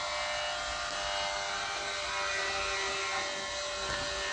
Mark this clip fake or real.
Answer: real